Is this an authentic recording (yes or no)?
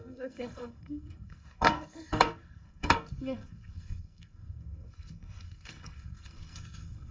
no